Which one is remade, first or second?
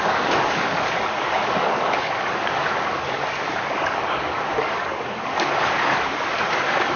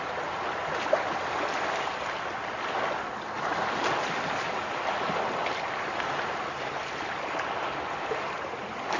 first